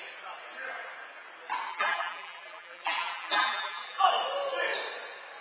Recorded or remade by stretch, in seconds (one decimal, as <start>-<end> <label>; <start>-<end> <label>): 0.0-1.7 recorded; 1.7-4.1 remade; 4.1-5.4 recorded